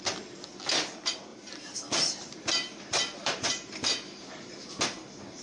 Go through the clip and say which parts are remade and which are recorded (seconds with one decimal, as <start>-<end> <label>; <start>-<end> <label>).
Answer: 0.0-1.3 recorded; 1.3-4.5 remade; 4.5-5.4 recorded